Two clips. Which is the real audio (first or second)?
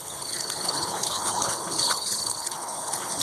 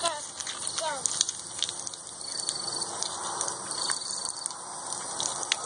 second